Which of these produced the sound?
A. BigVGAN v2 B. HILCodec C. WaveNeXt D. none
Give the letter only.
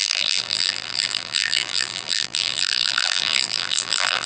A